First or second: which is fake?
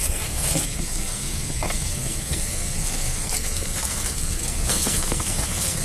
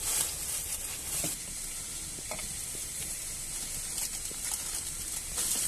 first